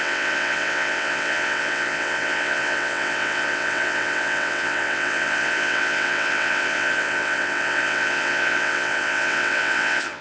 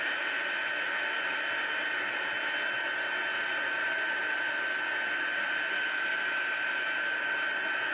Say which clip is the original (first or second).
second